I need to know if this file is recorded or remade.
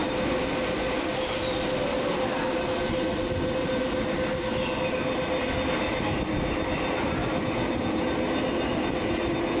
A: recorded